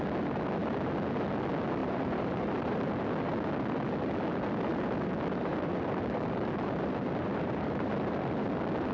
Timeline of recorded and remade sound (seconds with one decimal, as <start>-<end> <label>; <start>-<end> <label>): 0.0-1.8 recorded; 1.8-3.0 remade; 3.0-4.7 recorded; 4.7-8.5 remade; 8.5-8.9 recorded